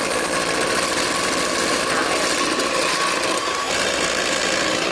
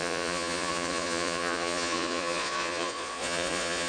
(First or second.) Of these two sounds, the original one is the first